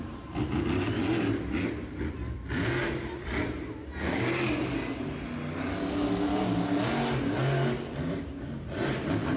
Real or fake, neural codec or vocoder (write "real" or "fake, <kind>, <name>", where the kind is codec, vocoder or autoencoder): real